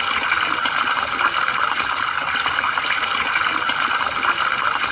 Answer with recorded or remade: recorded